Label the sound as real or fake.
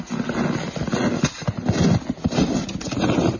real